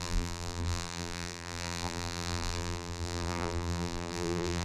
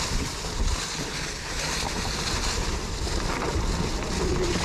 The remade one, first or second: first